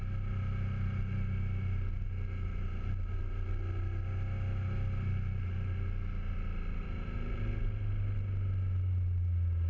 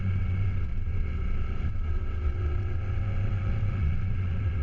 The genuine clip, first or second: first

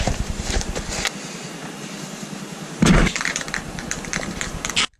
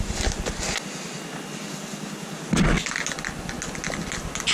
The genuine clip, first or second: second